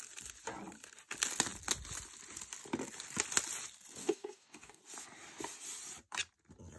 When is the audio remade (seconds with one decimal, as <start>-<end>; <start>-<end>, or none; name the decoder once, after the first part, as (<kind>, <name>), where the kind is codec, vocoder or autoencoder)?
4.0-4.8 (codec, DAC)